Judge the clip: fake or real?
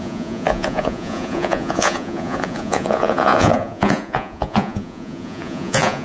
fake